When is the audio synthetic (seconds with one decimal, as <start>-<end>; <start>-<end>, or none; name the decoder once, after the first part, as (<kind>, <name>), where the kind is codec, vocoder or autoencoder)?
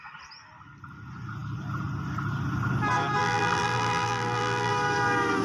3.2-4.7 (vocoder, BigVGAN v2)